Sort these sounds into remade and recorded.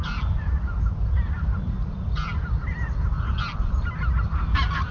recorded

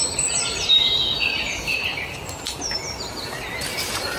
remade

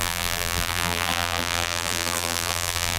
remade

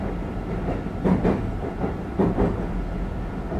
recorded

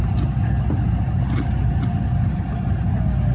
recorded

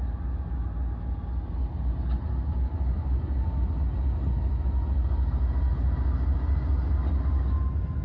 recorded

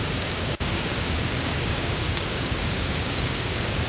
remade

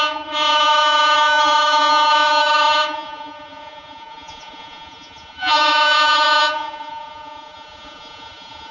remade